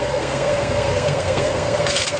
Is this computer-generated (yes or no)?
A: yes